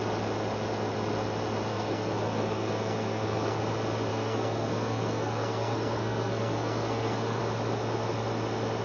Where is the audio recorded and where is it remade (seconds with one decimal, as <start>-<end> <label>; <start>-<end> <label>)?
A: 0.0-1.7 recorded; 1.7-3.6 remade; 3.6-4.1 recorded; 4.1-7.4 remade; 7.4-8.8 recorded